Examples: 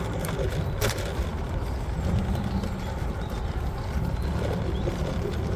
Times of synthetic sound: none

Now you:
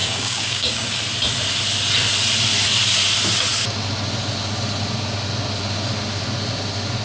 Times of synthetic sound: 0.0-1.0 (codec, DAC)

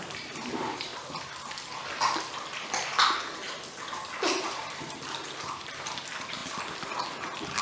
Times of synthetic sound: 0.0-0.9 (vocoder, BigVGAN v2); 4.5-6.4

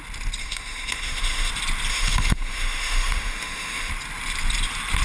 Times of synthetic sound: 0.4-1.5 (autoencoder, DAC-VAE); 1.9-3.9

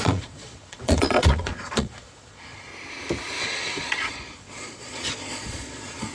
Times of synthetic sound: 0.0-2.7 (vocoder, Vocos); 3.4-6.1

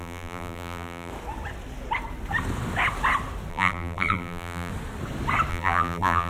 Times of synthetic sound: 0.0-1.1 (vocoder, BigVGAN v2); 3.5-4.7; 5.5-6.3